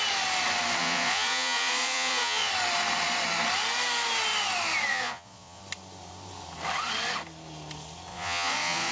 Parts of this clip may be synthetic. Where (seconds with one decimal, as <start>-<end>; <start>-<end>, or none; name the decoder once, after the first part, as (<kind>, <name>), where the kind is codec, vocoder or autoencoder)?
0.8-2.5 (vocoder, Vocos); 4.9-5.6; 8.1-8.9